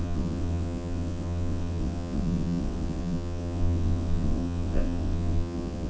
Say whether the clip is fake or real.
fake